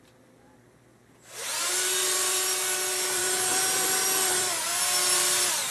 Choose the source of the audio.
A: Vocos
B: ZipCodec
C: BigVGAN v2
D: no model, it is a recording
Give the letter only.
C